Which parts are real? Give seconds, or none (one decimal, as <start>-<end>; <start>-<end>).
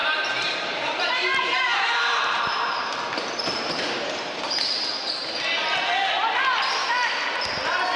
4.6-8.0